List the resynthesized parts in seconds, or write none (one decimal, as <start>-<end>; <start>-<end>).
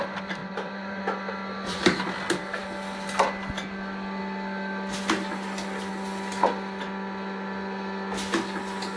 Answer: 0.4-1.0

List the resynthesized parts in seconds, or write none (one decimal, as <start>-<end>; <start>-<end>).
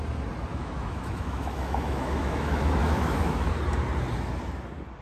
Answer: 0.5-3.5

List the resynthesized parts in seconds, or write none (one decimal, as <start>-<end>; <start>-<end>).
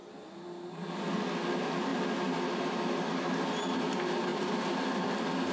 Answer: none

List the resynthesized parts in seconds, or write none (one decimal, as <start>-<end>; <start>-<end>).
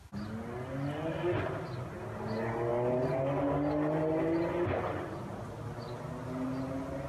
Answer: none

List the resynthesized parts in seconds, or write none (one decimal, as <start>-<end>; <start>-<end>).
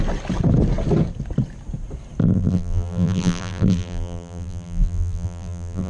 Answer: 2.2-5.9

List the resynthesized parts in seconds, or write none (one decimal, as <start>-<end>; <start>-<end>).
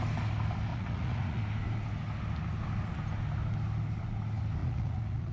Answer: 0.7-1.4; 4.6-5.3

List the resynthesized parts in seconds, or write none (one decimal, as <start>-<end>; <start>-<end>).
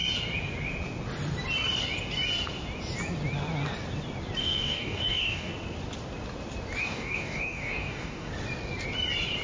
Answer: 4.4-5.5; 6.8-8.3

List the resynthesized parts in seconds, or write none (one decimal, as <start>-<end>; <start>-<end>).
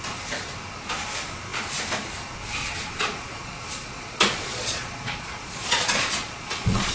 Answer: 2.6-6.9